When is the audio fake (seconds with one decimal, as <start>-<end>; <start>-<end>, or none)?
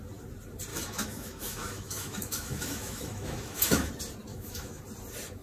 0.7-3.9; 4.3-4.8